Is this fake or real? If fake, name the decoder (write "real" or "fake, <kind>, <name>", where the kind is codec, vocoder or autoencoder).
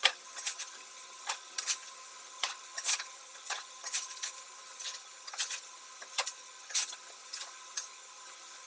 fake, vocoder, HiFi-GAN